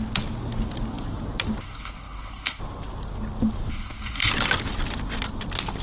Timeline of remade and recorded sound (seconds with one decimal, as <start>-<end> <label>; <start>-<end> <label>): 0.0-1.6 recorded; 1.6-2.6 remade; 2.6-3.7 recorded; 3.7-4.3 remade; 4.3-5.8 recorded